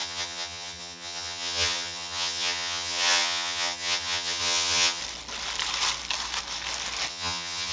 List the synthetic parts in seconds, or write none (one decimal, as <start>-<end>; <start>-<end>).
0.0-5.0; 7.1-7.7